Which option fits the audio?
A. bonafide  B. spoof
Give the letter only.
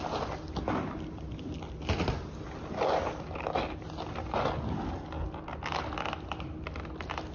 A